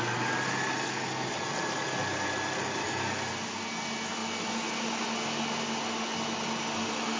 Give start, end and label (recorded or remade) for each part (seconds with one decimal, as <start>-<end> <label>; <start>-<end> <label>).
0.0-7.2 recorded